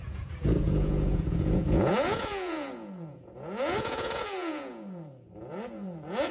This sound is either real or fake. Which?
fake